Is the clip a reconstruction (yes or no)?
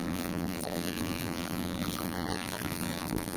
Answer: yes